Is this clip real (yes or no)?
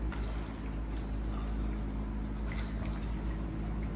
yes